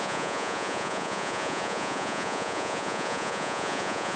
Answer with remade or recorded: remade